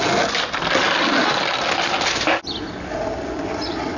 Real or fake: real